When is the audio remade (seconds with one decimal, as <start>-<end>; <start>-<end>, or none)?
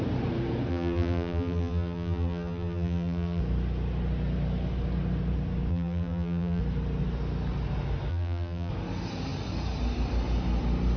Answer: 0.7-3.4; 5.7-6.6; 8.1-8.7